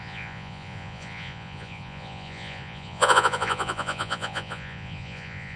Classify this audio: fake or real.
fake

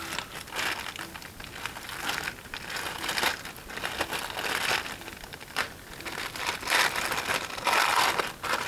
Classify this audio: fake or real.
real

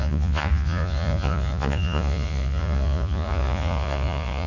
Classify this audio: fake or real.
fake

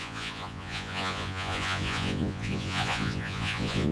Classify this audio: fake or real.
fake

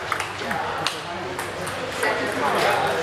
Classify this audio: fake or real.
real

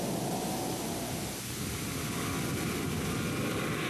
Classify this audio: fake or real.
real